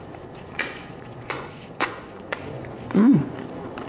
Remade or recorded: remade